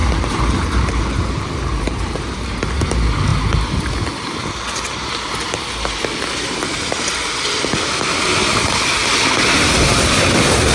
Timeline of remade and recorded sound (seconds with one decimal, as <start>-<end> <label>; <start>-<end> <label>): 0.0-2.7 remade; 2.7-10.7 recorded